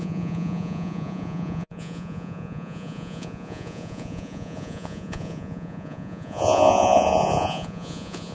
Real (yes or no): no